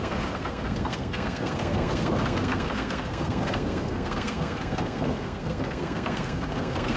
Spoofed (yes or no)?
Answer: yes